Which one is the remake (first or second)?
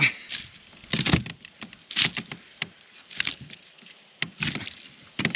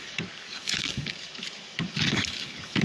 second